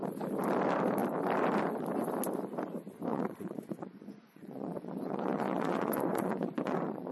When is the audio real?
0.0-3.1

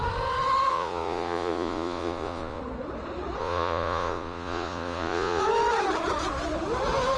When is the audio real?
0.0-0.7; 2.6-3.4; 5.4-7.2

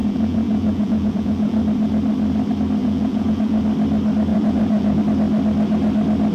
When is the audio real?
1.6-2.8; 3.6-4.3; 5.0-6.3

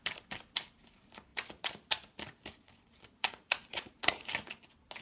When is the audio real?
0.0-3.2; 3.9-5.0